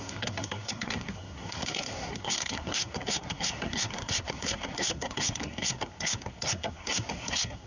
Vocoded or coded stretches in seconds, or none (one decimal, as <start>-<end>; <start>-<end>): 0.0-7.7